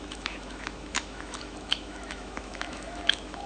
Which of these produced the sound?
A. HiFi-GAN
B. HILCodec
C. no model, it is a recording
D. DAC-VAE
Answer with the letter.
D